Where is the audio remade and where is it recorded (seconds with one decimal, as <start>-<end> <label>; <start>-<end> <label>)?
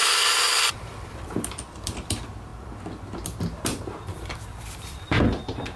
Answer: 0.0-0.6 recorded; 0.6-5.8 remade